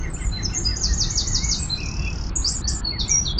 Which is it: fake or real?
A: real